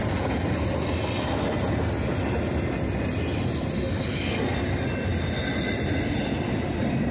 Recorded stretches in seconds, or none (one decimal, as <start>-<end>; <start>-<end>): 0.0-7.1